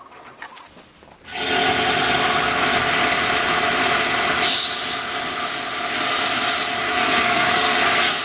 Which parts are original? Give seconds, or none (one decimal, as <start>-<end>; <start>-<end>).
0.0-6.9